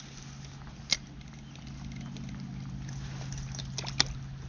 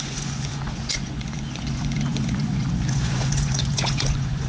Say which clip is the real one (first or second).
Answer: first